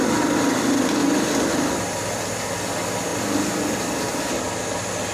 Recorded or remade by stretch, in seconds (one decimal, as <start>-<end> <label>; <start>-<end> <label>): 0.0-5.1 recorded